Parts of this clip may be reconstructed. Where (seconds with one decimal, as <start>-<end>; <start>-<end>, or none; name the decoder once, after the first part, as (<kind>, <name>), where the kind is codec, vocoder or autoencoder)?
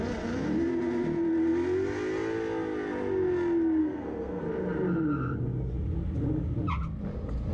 3.8-4.4 (codec, SNAC)